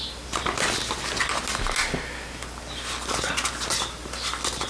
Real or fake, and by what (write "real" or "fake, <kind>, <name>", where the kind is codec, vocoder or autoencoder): real